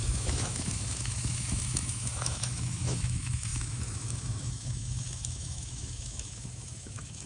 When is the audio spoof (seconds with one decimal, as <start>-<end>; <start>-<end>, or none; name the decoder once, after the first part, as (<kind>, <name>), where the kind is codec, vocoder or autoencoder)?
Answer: 0.0-7.3 (autoencoder, DAC-VAE)